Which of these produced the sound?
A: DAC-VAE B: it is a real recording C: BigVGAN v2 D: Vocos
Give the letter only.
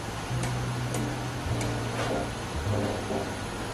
B